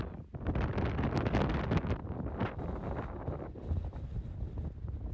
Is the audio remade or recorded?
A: recorded